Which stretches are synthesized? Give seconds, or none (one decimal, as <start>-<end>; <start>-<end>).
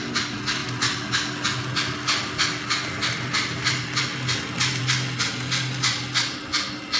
none